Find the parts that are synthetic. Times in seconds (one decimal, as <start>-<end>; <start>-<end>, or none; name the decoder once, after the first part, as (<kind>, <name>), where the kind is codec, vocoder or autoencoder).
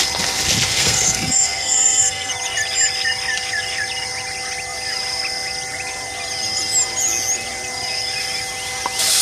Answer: 0.7-2.3 (codec, SNAC)